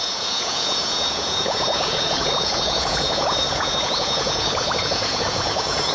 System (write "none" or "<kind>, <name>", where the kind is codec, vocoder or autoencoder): vocoder, Vocos